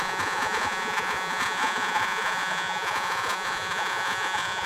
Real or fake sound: fake